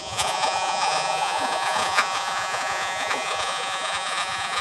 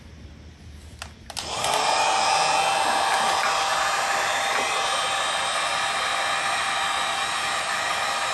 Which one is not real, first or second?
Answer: first